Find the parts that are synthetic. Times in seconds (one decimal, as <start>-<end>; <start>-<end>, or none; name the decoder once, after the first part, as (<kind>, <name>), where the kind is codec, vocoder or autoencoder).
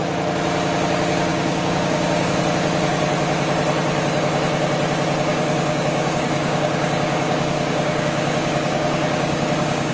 1.3-2.4 (codec, DAC); 5.3-9.9